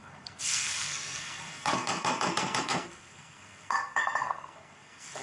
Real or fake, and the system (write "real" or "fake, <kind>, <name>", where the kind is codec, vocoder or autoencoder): fake, codec, SNAC